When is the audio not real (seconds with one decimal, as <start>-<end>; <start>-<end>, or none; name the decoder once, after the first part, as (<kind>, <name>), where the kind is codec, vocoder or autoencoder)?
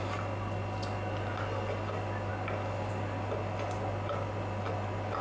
none